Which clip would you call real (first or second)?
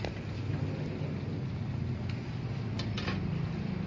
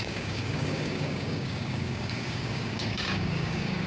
first